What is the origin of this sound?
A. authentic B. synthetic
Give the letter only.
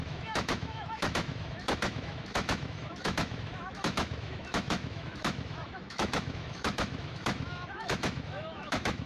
B